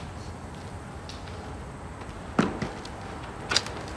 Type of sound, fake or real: real